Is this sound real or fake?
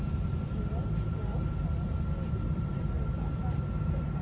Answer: real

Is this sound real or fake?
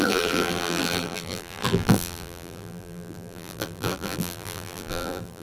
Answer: fake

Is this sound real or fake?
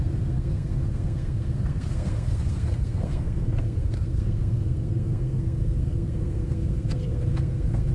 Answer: fake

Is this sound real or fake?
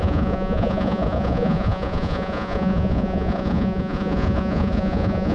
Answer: fake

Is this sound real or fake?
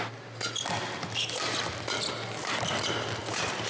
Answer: real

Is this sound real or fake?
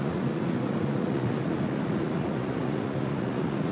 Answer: fake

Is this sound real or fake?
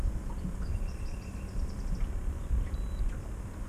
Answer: real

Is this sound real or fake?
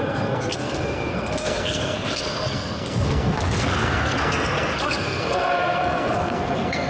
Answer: fake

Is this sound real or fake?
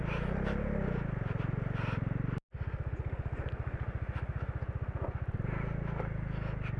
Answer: real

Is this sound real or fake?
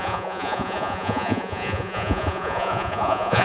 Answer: fake